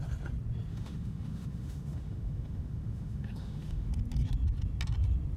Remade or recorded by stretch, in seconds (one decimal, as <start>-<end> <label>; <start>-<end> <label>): 0.0-0.7 recorded; 0.7-3.9 remade; 3.9-5.4 recorded